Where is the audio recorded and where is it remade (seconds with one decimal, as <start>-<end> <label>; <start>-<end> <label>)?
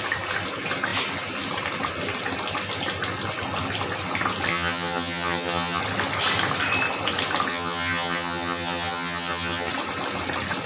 0.0-4.5 recorded; 4.5-5.8 remade; 5.8-7.5 recorded; 7.5-9.7 remade; 9.7-10.7 recorded